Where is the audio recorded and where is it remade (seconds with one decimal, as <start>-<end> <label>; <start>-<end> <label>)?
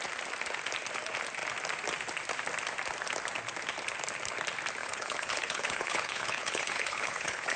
0.0-4.8 recorded; 4.8-7.6 remade